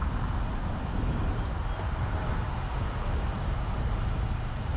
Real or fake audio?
fake